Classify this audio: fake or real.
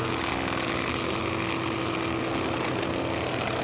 real